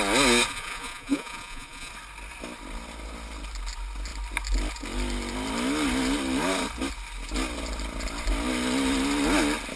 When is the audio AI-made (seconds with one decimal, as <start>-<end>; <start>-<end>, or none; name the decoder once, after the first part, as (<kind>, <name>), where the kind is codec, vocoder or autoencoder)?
0.5-1.9 (vocoder, Vocos)